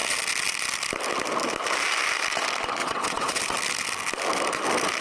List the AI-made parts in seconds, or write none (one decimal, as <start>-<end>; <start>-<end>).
2.8-3.4